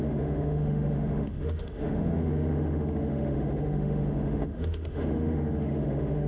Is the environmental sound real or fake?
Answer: fake